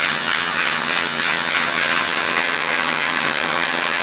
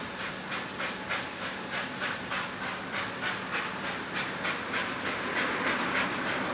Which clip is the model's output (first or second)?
first